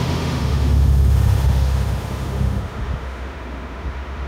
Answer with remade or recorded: remade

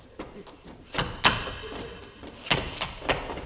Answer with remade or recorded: recorded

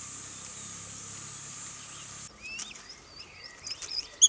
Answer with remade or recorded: recorded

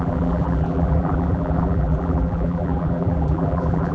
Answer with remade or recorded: remade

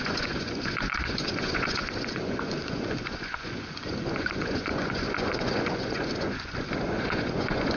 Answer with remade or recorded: remade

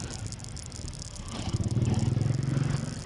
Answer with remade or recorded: recorded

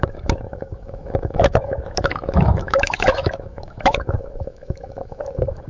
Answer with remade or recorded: remade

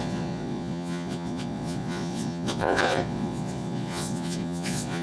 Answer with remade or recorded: remade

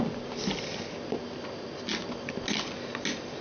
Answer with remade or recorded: recorded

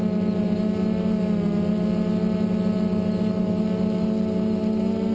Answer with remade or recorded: recorded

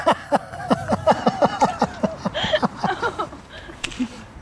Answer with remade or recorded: remade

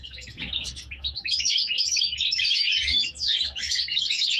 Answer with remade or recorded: remade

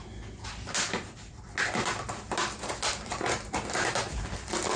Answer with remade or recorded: recorded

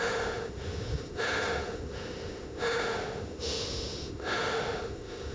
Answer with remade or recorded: remade